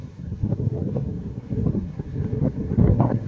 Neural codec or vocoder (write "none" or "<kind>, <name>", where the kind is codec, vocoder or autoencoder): codec, SNAC